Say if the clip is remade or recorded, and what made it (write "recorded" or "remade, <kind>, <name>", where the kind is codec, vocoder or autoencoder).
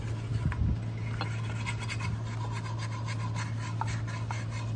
recorded